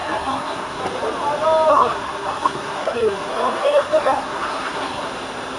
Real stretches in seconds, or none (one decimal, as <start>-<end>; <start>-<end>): 0.8-1.7; 5.1-5.6